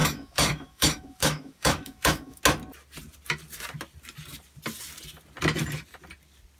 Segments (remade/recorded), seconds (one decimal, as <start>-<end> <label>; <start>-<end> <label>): 0.0-2.4 remade; 2.4-6.6 recorded